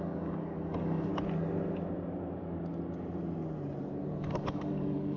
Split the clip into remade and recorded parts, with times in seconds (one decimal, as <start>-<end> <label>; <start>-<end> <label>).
0.0-1.1 remade; 1.1-4.2 recorded; 4.2-5.2 remade